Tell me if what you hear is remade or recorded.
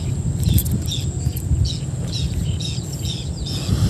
recorded